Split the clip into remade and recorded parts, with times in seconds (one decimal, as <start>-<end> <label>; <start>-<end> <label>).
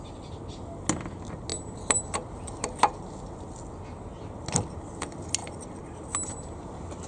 0.0-7.1 recorded